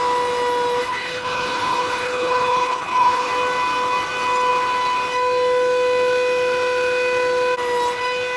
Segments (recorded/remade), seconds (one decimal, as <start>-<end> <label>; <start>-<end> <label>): 0.0-0.8 recorded; 0.8-3.3 remade; 3.3-8.4 recorded